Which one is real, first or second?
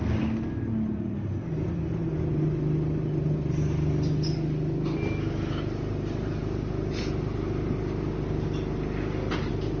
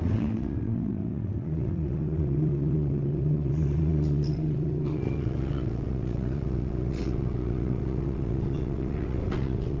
first